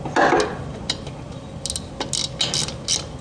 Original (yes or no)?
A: yes